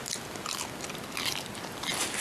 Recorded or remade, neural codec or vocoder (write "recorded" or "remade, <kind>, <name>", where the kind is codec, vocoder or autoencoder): recorded